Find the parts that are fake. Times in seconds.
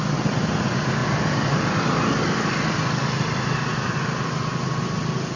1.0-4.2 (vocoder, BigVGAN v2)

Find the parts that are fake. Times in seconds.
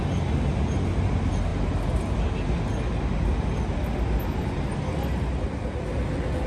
none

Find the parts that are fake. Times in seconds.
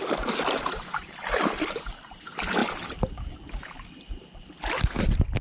none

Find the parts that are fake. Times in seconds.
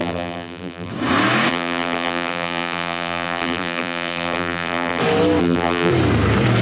0.0-0.9 (vocoder, BigVGAN v2); 1.5-5.0; 5.4-5.9